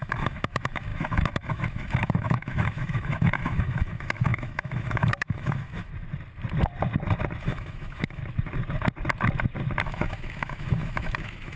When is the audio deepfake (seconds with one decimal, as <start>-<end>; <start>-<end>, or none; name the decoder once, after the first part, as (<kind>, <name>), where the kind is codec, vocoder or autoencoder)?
0.0-5.9 (autoencoder, DAC-VAE); 7.4-8.2; 9.8-11.6